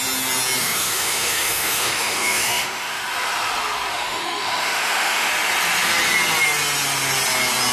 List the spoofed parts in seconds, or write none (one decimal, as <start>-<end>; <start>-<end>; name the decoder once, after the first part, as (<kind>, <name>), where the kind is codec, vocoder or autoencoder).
0.6-3.0 (autoencoder, DAC-VAE); 3.9-5.3